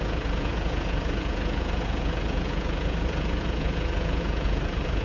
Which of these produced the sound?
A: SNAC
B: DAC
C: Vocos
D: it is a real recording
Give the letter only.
C